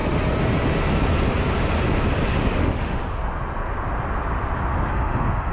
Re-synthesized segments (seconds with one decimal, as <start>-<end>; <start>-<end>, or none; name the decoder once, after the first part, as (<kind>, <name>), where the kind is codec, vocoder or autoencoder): 2.6-3.0 (autoencoder, DAC-VAE); 4.7-5.5